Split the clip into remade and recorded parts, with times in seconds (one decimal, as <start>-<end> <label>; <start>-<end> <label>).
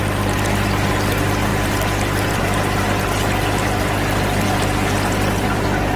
0.0-6.0 recorded